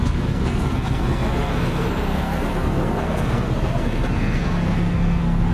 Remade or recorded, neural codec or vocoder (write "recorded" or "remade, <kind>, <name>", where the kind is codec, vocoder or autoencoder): remade, codec, SNAC